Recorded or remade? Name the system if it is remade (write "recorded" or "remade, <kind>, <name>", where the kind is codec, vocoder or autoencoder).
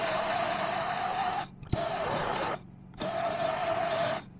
remade, vocoder, BigVGAN v2